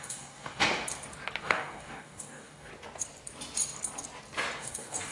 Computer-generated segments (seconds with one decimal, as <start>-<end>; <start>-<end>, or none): 0.0-0.6; 1.4-2.7; 4.6-5.1